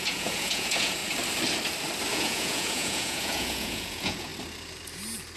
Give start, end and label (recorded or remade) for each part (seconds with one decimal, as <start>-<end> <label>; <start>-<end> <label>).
0.0-1.0 remade; 1.0-2.1 recorded; 2.1-4.3 remade; 4.3-5.4 recorded